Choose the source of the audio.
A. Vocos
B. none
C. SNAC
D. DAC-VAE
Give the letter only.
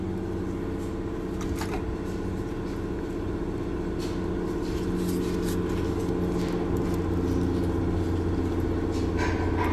B